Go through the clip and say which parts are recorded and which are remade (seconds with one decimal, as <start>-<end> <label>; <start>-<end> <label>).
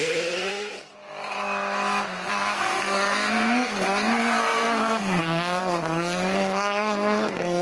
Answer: 0.0-0.9 remade; 0.9-2.3 recorded; 2.3-7.6 remade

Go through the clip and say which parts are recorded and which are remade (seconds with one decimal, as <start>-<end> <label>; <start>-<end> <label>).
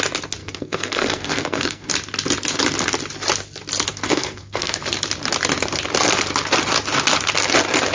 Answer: 0.0-0.4 recorded; 0.4-1.9 remade; 1.9-3.9 recorded; 3.9-4.8 remade; 4.8-7.9 recorded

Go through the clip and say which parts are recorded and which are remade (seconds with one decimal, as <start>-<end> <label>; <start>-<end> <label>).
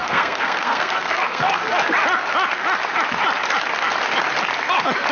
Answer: 0.0-1.6 remade; 1.6-5.1 recorded